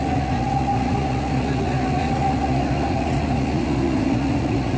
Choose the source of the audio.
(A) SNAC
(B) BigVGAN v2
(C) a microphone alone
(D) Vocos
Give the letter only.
D